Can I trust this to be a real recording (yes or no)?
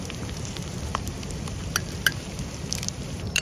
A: no